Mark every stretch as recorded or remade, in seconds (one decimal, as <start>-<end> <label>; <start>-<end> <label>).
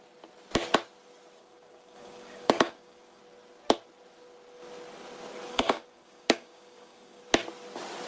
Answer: 0.0-1.4 recorded; 1.4-3.2 remade; 3.2-5.5 recorded; 5.5-7.2 remade; 7.2-8.1 recorded